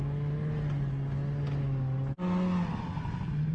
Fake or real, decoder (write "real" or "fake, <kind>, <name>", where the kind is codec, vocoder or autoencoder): real